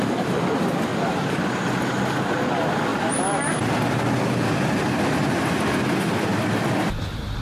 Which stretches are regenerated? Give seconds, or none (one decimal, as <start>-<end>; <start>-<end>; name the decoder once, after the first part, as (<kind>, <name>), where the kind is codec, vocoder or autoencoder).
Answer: none